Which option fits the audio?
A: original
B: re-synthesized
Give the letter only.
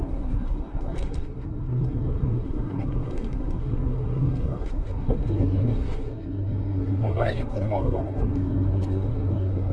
B